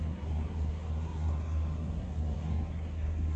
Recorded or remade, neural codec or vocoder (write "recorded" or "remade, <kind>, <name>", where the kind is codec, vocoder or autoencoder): remade, codec, SNAC